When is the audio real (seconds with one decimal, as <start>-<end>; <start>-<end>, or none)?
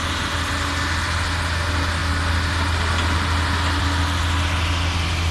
0.0-5.3